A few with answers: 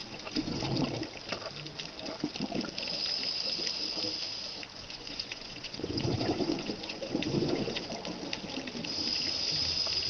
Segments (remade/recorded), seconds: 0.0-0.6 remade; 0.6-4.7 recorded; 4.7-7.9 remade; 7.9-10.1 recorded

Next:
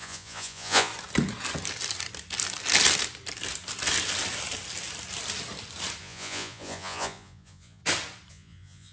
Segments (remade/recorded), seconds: 0.0-0.9 remade; 0.9-6.0 recorded; 6.0-7.8 remade; 7.8-8.3 recorded; 8.3-8.9 remade

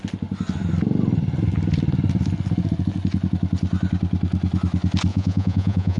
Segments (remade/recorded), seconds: 0.0-5.1 recorded; 5.1-6.0 remade

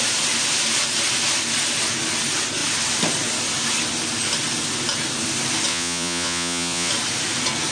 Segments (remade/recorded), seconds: 0.0-5.7 recorded; 5.7-6.9 remade; 6.9-7.7 recorded

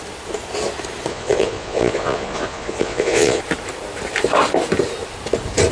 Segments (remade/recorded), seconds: 0.0-1.1 recorded; 1.1-3.4 remade; 3.4-5.7 recorded

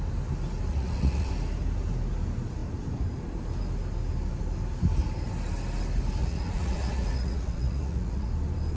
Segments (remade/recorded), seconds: 0.0-0.7 recorded; 0.7-1.3 remade; 1.3-6.2 recorded; 6.2-8.3 remade; 8.3-8.8 recorded

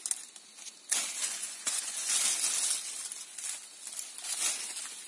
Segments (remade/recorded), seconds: 0.0-1.2 recorded; 1.2-2.2 remade; 2.2-5.1 recorded